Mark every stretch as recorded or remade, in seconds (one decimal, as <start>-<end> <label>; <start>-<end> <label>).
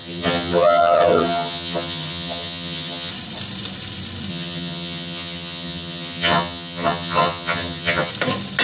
0.0-3.1 remade; 3.1-4.3 recorded; 4.3-8.1 remade; 8.1-8.6 recorded